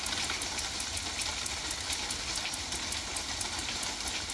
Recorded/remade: recorded